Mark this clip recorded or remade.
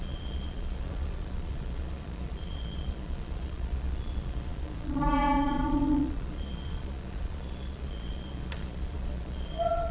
remade